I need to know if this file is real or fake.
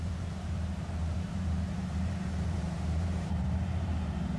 fake